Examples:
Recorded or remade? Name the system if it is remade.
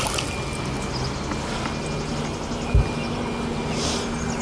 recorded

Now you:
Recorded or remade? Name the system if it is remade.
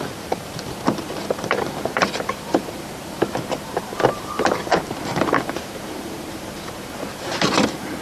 remade, vocoder, BigVGAN v2